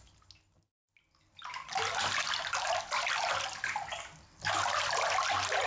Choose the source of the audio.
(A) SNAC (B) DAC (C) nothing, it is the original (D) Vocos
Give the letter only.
C